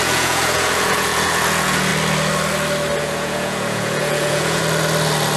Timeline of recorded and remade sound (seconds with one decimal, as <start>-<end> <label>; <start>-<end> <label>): 0.0-1.9 remade; 1.9-3.0 recorded; 3.0-4.6 remade; 4.6-5.4 recorded